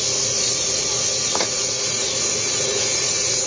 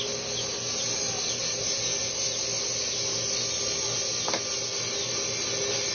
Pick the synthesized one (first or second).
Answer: first